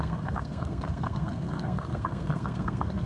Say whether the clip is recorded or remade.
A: remade